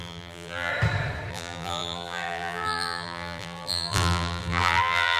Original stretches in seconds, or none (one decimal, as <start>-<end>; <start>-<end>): 0.7-1.3